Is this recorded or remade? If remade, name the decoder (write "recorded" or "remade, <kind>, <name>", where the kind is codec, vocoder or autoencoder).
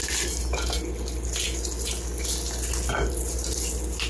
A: recorded